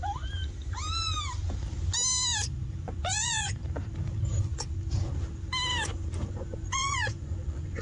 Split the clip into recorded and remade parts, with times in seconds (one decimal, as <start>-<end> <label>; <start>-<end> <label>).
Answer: 0.0-2.8 recorded; 2.8-3.6 remade; 3.6-6.3 recorded; 6.3-7.8 remade